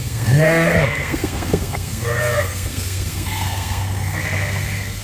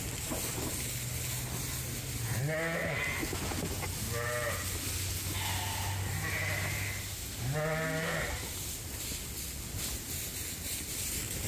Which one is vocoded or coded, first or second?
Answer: first